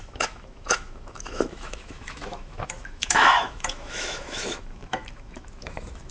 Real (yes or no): no